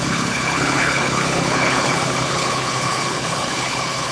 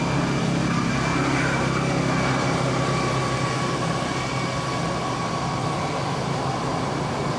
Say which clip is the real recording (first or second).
second